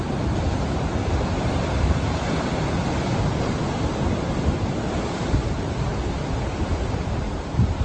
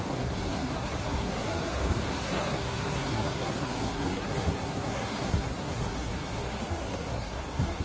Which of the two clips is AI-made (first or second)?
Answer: second